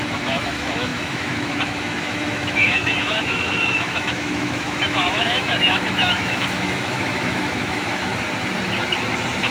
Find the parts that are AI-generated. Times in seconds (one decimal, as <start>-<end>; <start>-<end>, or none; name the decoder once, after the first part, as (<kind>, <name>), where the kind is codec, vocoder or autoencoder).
0.0-8.1 (autoencoder, DAC-VAE)